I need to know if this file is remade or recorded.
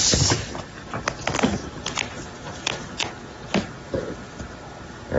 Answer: recorded